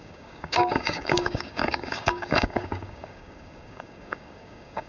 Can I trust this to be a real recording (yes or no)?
no